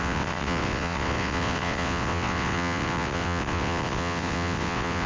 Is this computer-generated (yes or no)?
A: yes